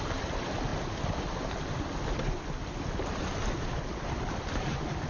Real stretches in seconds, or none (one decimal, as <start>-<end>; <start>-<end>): 0.0-5.1